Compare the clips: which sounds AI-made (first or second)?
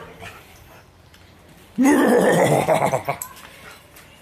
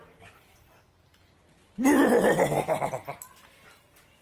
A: first